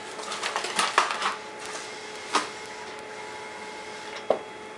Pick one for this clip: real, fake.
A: real